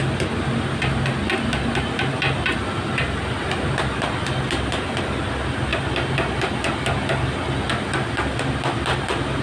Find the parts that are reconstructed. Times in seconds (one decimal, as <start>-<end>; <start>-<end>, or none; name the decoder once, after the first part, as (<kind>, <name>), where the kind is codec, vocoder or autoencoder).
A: none